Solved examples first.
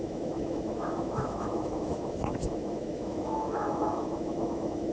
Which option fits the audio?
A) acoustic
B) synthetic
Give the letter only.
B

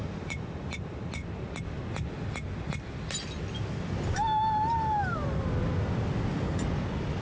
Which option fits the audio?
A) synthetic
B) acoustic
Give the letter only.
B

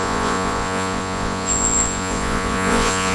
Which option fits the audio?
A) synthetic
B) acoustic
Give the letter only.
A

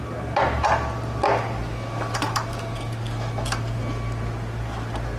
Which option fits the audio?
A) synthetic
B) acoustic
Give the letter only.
B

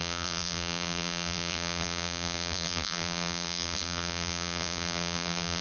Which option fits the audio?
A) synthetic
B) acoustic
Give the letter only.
A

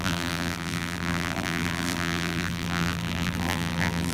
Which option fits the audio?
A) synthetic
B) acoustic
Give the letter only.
A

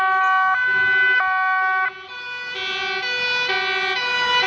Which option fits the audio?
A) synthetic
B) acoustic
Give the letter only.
B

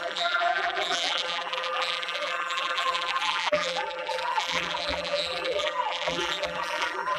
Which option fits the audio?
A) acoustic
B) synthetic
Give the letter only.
B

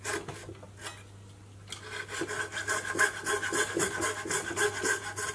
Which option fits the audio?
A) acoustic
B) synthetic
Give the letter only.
A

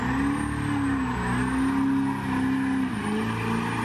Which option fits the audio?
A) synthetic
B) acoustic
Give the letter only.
B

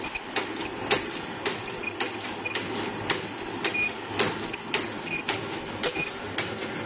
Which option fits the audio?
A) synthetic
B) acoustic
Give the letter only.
B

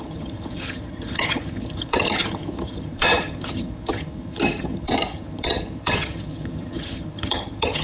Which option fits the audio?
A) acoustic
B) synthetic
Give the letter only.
B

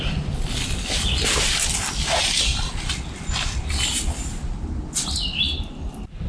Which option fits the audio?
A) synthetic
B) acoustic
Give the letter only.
B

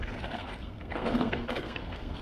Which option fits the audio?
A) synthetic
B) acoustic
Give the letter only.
A